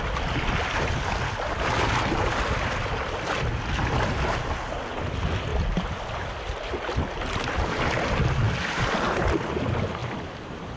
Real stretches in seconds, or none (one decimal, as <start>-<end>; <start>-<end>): 0.0-10.8